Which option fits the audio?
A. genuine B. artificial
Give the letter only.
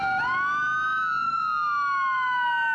A